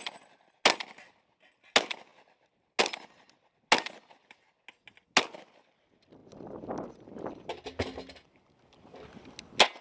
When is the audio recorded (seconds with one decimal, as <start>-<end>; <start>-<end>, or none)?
0.0-9.8